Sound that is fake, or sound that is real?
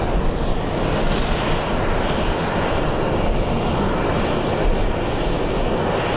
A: real